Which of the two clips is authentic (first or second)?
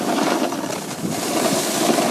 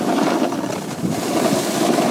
first